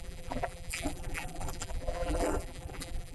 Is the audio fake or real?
fake